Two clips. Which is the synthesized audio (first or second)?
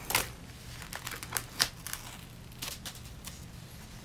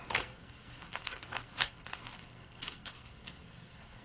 second